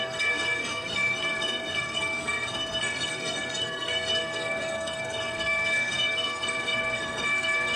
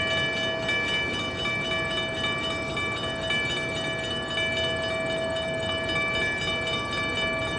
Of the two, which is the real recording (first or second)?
second